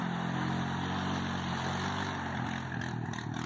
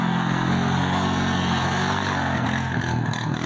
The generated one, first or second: second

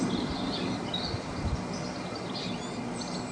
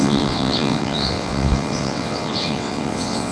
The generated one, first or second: second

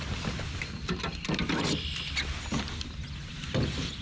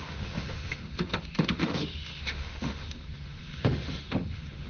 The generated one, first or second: second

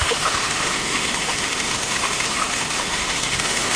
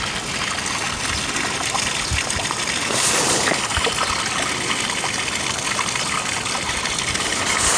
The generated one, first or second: first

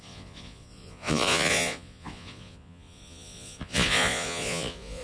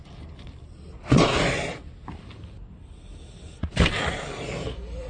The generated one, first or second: first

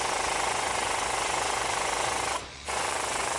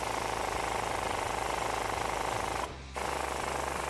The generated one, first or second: first